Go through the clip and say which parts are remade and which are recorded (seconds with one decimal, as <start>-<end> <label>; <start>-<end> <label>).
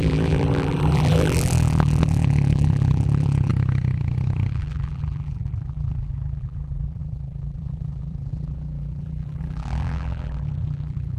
0.0-3.5 remade; 3.5-4.5 recorded; 4.5-11.2 remade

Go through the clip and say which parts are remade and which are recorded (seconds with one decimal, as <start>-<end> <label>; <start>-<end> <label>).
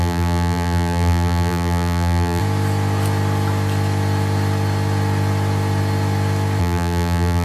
0.0-2.4 remade; 2.4-6.6 recorded; 6.6-7.4 remade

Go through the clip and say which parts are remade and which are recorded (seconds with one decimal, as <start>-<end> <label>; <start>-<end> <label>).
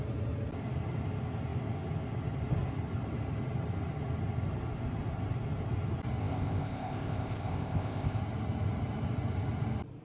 0.0-6.2 recorded; 6.2-8.2 remade; 8.2-10.0 recorded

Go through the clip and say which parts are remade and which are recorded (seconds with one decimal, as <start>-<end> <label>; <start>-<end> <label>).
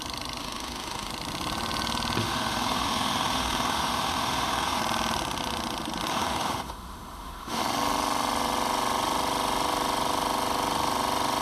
0.0-0.4 recorded; 0.4-1.1 remade; 1.1-2.2 recorded; 2.2-4.8 remade; 4.8-6.1 recorded; 6.1-7.6 remade; 7.6-11.4 recorded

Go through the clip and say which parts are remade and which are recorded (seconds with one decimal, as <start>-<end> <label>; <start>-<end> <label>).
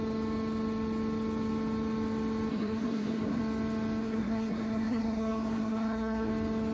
0.0-2.5 recorded; 2.5-3.4 remade; 3.4-4.0 recorded; 4.0-6.3 remade; 6.3-6.7 recorded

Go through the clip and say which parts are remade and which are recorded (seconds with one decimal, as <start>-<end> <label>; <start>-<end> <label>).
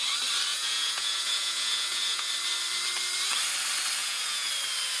0.0-0.5 recorded; 0.5-2.3 remade; 2.3-4.0 recorded; 4.0-4.5 remade; 4.5-5.0 recorded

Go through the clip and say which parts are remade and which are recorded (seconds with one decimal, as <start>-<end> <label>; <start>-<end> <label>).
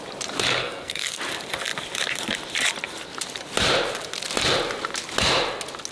0.0-0.6 recorded; 0.6-1.2 remade; 1.2-5.9 recorded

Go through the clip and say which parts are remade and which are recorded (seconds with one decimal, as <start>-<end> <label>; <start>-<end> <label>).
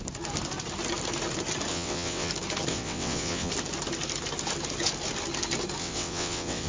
0.0-1.7 recorded; 1.7-2.3 remade; 2.3-2.7 recorded; 2.7-3.5 remade; 3.5-5.8 recorded; 5.8-6.7 remade